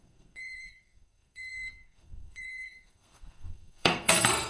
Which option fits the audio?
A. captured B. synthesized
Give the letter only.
B